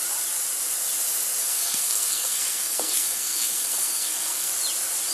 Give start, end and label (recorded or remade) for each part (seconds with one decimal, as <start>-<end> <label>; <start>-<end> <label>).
0.0-1.4 recorded; 1.4-4.5 remade; 4.5-5.1 recorded

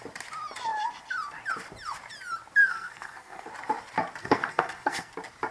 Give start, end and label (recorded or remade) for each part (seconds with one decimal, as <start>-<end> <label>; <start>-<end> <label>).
0.0-2.6 recorded; 2.6-3.5 remade; 3.5-4.2 recorded; 4.2-5.1 remade; 5.1-5.5 recorded

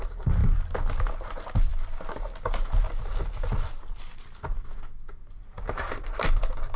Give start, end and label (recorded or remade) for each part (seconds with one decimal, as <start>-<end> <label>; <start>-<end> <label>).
0.0-6.8 recorded